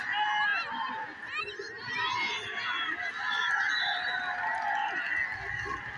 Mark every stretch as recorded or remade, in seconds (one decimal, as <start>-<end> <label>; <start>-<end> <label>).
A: 0.0-6.0 recorded